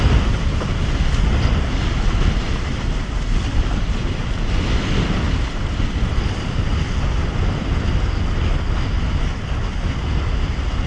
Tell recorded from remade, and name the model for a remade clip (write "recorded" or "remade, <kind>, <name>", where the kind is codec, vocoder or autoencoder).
recorded